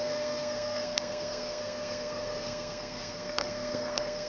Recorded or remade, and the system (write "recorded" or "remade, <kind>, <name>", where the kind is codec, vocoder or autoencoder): remade, codec, SNAC